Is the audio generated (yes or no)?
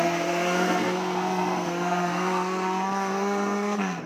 yes